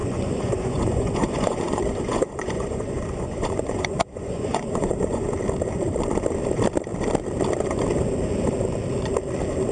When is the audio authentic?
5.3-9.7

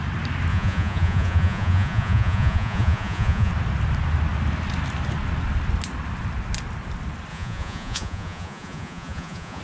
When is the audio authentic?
0.0-0.5; 3.5-7.3